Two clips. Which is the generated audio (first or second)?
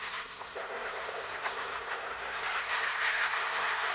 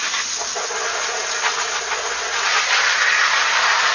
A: first